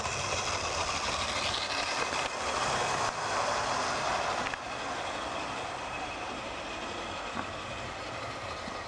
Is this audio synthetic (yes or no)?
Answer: no